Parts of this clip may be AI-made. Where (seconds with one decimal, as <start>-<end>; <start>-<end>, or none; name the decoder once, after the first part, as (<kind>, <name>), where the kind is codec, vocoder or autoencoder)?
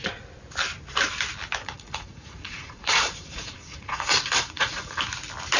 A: 1.6-5.0 (vocoder, Vocos)